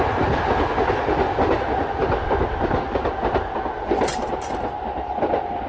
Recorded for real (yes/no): yes